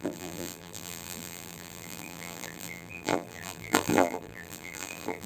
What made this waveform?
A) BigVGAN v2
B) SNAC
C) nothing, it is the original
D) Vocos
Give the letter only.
A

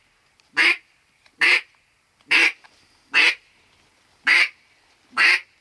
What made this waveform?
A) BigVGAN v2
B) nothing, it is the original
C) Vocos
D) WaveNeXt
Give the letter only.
A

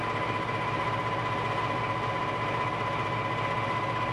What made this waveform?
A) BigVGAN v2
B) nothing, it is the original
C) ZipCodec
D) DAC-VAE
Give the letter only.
B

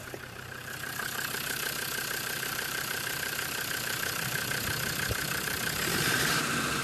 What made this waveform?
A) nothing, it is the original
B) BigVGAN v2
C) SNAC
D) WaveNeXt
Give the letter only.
B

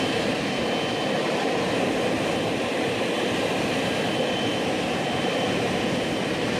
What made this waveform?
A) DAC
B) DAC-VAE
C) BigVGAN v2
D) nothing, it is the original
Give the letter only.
D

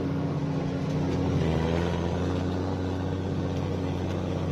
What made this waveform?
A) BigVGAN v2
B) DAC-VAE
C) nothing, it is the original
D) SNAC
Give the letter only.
C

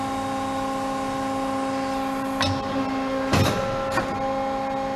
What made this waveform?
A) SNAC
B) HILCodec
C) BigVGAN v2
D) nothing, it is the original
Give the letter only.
D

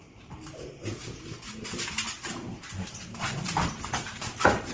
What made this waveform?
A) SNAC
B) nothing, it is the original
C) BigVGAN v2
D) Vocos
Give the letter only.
C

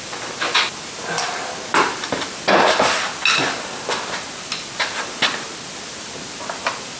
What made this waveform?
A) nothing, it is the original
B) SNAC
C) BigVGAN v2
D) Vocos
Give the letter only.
A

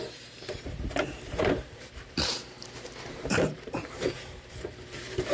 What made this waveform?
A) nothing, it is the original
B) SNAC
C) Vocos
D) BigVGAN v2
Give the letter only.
D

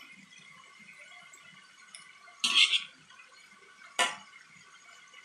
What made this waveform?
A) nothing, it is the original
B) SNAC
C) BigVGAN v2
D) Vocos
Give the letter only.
A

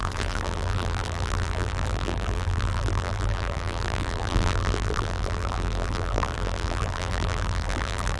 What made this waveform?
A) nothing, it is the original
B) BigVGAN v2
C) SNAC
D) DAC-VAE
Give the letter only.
B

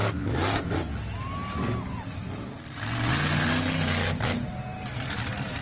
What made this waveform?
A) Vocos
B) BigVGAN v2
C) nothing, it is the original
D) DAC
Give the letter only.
C